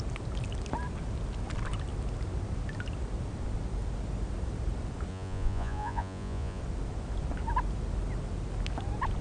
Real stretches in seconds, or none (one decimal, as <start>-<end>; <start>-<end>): 0.0-5.1; 6.6-9.2

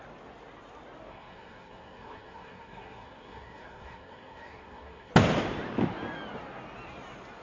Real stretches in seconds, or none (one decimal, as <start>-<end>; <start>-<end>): 0.0-1.1; 5.1-7.4